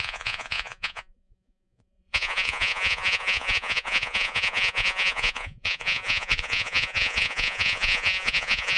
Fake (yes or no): yes